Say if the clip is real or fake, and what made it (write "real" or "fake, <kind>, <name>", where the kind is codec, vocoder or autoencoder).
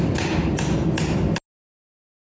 real